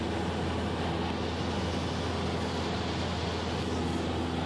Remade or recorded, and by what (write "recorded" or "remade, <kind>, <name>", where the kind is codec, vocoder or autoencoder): recorded